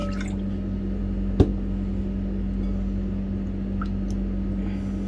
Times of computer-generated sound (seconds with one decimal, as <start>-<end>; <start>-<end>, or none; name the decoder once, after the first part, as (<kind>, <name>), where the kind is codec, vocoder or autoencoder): none